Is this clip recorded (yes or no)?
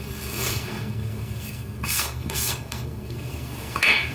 no